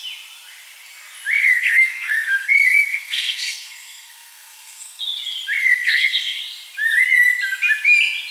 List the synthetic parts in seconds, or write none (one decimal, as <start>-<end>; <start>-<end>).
1.4-5.0; 5.6-6.4